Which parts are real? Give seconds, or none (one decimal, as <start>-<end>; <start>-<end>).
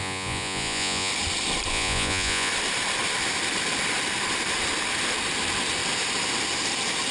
1.1-1.7; 2.5-7.1